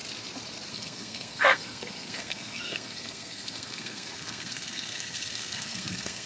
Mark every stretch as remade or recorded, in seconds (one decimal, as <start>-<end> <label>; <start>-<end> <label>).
0.0-0.7 recorded; 0.7-6.3 remade